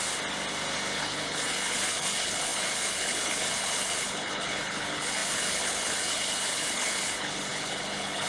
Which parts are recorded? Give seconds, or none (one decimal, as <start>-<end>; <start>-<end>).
0.0-1.0